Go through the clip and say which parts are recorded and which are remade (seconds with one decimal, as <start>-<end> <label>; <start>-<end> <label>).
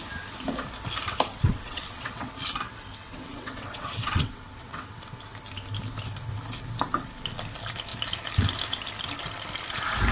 0.0-1.3 recorded; 1.3-2.3 remade; 2.3-2.9 recorded; 2.9-5.0 remade; 5.0-10.1 recorded